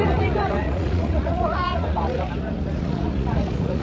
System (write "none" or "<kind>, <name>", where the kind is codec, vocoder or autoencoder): vocoder, Vocos